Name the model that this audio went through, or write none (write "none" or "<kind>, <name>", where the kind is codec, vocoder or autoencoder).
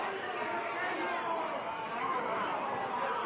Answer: none